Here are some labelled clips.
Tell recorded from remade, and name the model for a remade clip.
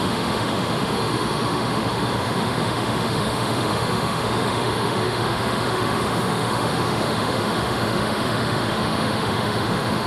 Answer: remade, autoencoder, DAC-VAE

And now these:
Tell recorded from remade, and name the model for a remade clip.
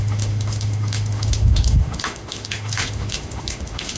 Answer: remade, autoencoder, DAC-VAE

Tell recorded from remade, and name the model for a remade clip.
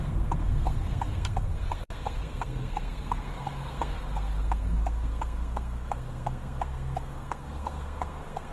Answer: remade, codec, SNAC